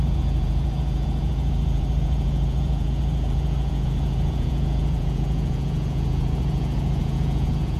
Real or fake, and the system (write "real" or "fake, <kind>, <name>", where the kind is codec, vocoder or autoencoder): fake, vocoder, Vocos